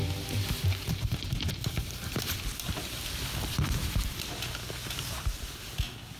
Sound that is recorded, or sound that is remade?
recorded